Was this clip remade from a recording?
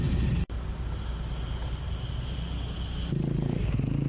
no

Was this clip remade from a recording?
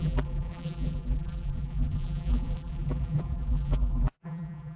yes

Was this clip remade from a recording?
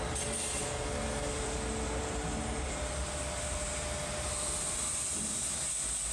no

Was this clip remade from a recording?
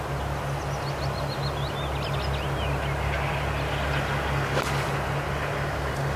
no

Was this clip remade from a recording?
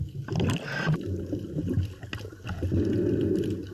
no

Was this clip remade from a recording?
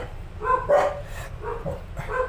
no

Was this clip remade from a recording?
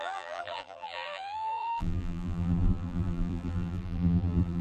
yes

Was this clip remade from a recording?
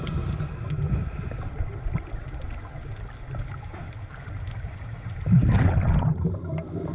no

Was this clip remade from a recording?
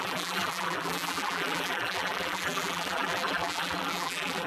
yes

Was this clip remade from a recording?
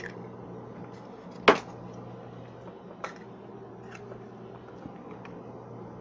no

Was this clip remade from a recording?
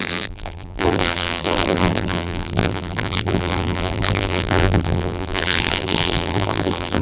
yes